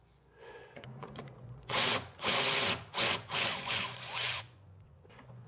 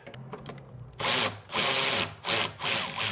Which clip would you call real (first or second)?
second